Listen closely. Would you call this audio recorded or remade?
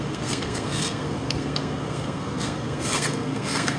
remade